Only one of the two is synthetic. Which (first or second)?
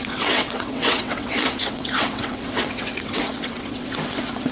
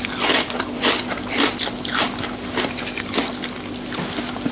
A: first